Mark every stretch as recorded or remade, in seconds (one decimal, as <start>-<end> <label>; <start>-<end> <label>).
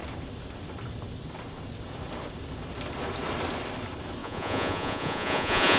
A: 0.0-4.2 recorded; 4.2-5.8 remade